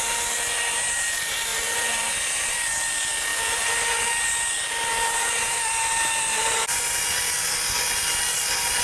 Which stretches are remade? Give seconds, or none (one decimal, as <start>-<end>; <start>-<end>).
none